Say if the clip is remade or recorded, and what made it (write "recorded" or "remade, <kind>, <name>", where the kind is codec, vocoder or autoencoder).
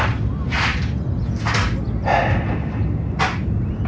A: recorded